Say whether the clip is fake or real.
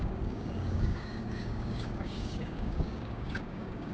fake